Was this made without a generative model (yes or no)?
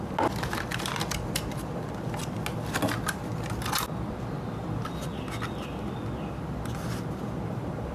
yes